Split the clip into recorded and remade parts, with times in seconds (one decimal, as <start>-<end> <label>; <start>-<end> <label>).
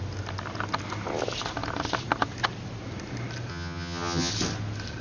0.0-3.5 recorded; 3.5-4.3 remade; 4.3-5.0 recorded